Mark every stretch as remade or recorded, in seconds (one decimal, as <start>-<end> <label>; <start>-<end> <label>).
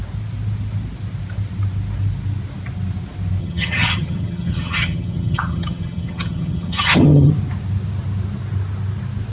0.0-3.4 recorded; 3.4-7.3 remade; 7.3-9.3 recorded